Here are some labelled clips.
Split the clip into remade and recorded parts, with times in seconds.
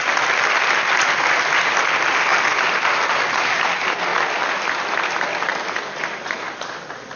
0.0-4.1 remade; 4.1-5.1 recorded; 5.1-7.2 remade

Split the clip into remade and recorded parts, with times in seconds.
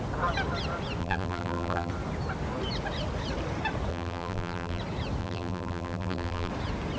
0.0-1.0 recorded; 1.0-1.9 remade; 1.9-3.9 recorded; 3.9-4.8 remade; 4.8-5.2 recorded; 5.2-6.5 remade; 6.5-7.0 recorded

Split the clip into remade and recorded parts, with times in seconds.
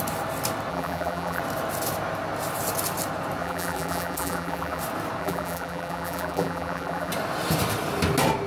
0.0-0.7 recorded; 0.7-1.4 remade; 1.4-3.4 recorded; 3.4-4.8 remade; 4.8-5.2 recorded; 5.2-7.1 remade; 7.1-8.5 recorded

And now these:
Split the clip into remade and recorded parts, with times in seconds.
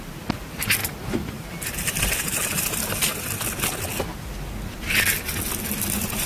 0.0-0.8 recorded; 0.8-2.0 remade; 2.0-6.3 recorded